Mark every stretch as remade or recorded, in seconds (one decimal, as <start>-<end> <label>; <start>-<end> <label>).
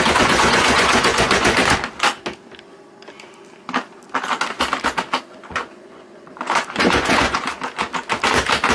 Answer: 0.0-1.6 remade; 1.6-5.2 recorded; 5.2-7.5 remade; 7.5-8.7 recorded